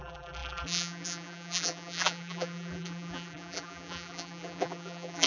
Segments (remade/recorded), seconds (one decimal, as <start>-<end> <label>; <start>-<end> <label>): 0.0-5.3 remade